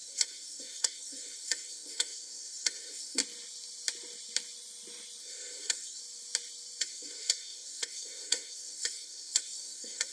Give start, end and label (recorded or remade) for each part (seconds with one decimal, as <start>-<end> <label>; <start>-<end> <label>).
0.0-3.2 remade; 3.2-5.2 recorded; 5.2-6.0 remade; 6.0-6.8 recorded; 6.8-10.1 remade